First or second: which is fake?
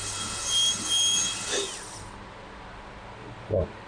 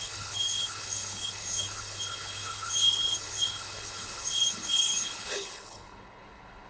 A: second